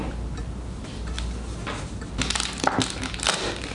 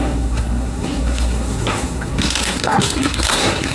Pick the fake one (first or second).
second